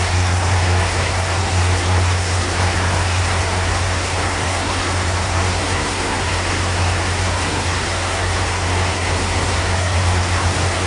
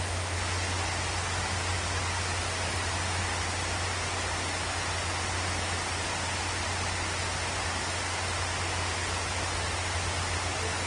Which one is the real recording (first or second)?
second